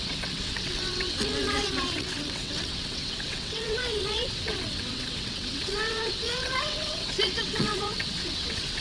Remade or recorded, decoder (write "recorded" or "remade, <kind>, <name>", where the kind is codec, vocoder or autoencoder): remade, vocoder, WaveNeXt